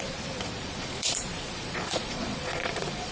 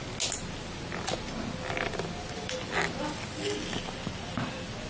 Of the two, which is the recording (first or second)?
second